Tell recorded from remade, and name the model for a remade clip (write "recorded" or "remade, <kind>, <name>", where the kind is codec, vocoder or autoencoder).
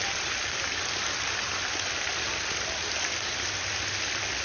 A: recorded